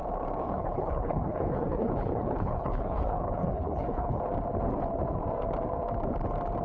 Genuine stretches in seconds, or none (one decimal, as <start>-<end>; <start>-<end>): 0.0-0.4; 4.2-6.6